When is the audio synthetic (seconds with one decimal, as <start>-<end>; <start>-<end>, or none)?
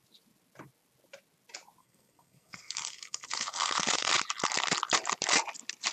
1.8-4.1